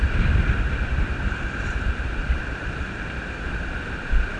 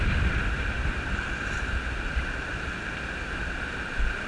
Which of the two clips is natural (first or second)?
second